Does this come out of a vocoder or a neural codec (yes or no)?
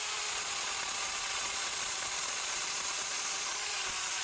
yes